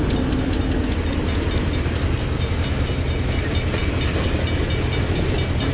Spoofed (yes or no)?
no